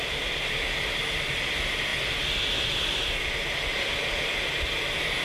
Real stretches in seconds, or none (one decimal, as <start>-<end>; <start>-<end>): 0.0-5.2